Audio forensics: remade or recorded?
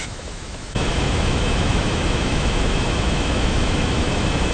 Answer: remade